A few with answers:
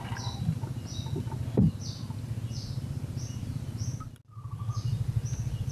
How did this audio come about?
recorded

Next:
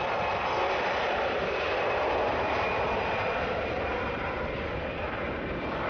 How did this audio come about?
remade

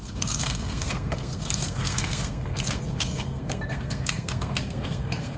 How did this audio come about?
remade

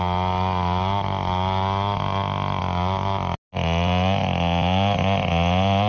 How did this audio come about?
recorded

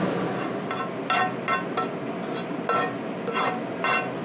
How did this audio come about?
recorded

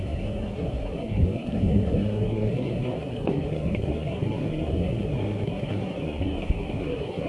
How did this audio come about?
remade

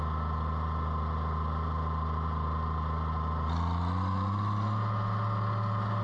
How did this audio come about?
recorded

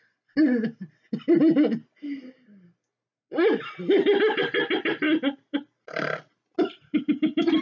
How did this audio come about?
recorded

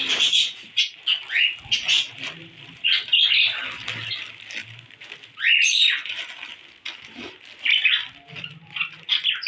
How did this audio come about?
recorded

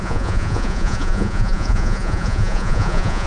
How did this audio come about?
remade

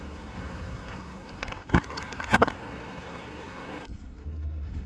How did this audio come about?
remade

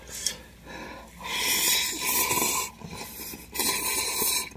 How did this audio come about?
recorded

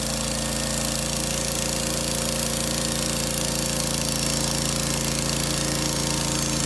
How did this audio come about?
recorded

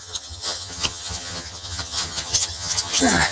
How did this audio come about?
remade